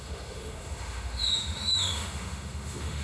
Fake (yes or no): yes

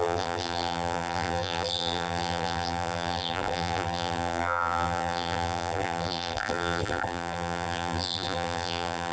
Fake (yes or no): yes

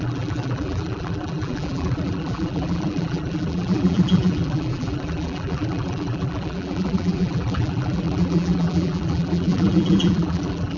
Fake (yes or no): yes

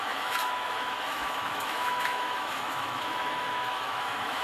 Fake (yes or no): yes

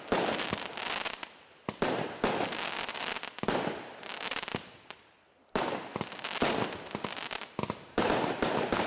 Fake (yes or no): no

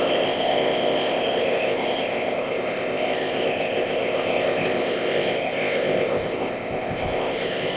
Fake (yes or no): yes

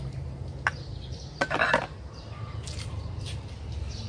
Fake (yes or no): no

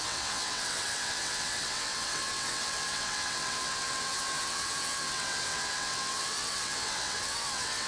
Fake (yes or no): yes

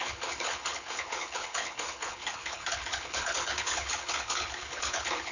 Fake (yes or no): yes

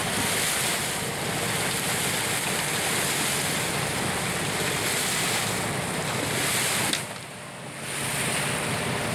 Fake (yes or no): no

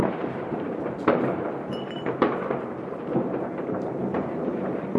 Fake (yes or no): yes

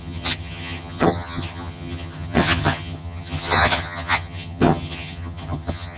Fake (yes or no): yes